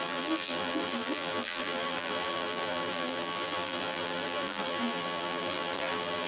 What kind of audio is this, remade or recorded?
remade